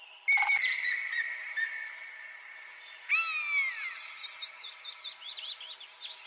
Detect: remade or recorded recorded